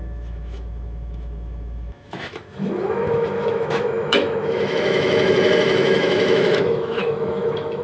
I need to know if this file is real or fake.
fake